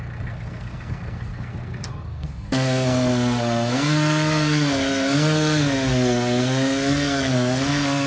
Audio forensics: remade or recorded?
remade